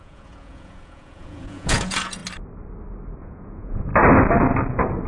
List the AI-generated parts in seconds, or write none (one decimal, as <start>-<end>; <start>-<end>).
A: 0.0-2.2; 3.2-3.9